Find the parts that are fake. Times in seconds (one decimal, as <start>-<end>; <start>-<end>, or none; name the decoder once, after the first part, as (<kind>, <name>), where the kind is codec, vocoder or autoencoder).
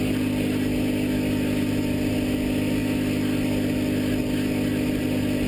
none